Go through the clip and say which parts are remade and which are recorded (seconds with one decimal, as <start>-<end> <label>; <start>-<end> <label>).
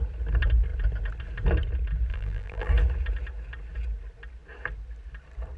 0.0-2.1 recorded; 2.1-2.7 remade; 2.7-5.6 recorded